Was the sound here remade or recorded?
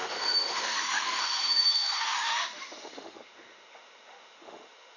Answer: remade